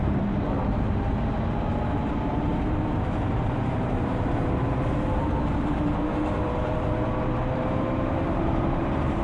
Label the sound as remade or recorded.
remade